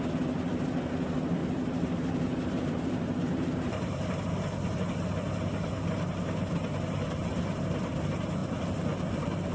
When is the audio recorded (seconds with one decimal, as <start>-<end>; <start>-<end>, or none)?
0.0-1.4; 4.2-9.5